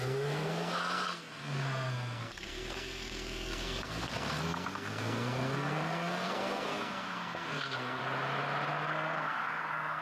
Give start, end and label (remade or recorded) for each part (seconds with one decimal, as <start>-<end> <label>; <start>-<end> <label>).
0.0-8.0 remade; 8.0-8.7 recorded; 8.7-10.0 remade